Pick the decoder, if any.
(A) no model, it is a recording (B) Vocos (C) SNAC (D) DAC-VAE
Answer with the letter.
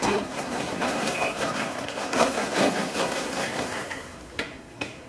C